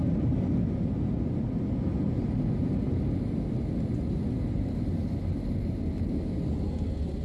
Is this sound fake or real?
real